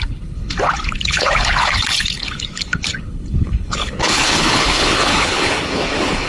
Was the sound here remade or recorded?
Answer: remade